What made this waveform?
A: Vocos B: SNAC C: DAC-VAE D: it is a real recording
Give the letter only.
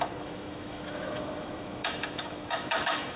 C